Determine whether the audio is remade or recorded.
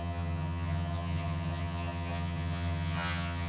remade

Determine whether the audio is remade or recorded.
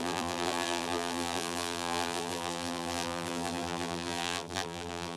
remade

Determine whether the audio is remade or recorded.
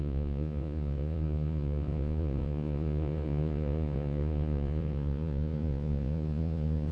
remade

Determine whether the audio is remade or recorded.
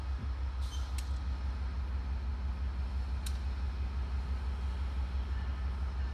recorded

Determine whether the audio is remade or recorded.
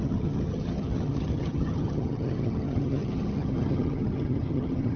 remade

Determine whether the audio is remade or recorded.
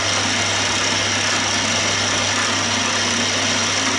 recorded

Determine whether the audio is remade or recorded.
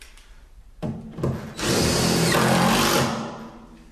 recorded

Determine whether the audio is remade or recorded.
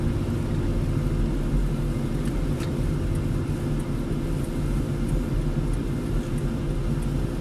recorded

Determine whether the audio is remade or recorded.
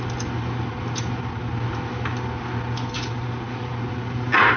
recorded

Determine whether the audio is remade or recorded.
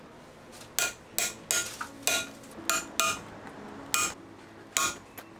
recorded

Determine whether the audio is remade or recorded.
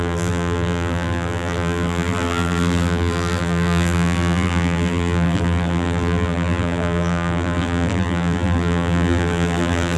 remade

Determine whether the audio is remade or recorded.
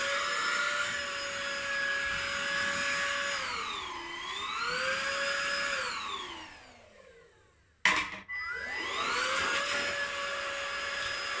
recorded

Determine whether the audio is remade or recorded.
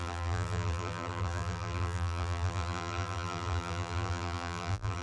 remade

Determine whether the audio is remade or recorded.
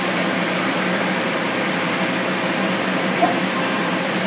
remade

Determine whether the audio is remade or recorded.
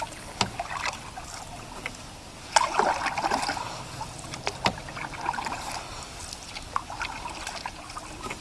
recorded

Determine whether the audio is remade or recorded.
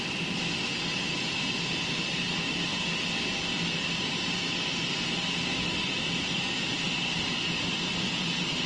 recorded